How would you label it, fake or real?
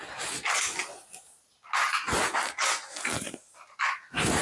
real